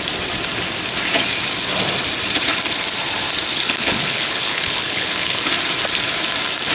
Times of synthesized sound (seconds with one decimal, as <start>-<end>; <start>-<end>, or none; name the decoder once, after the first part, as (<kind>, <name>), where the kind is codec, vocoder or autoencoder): 3.5-5.5 (codec, HILCodec)